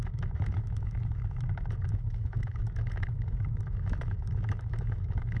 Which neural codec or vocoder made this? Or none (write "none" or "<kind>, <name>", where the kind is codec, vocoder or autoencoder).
autoencoder, DAC-VAE